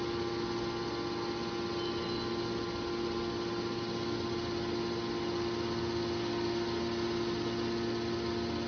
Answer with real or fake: real